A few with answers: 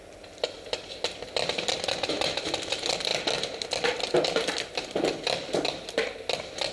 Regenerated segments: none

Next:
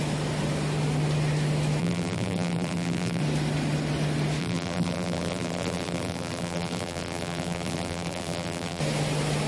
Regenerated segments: 1.8-3.2 (vocoder, BigVGAN v2); 4.4-8.8

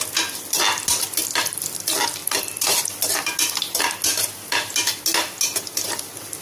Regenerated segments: none

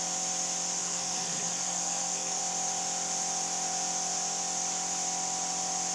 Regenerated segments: 0.8-2.4 (codec, SNAC)

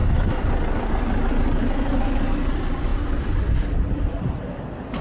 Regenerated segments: 0.0-0.9 (vocoder, BigVGAN v2); 2.9-3.4

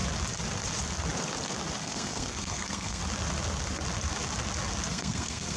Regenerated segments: 1.8-3.0 (codec, SNAC); 4.9-5.6

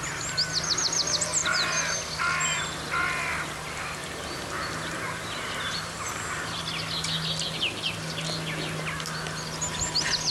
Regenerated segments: 1.4-2.6 (vocoder, BigVGAN v2); 4.0-6.6

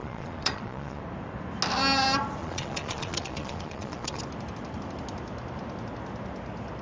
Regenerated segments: 0.0-1.0 (vocoder, Vocos); 2.4-4.2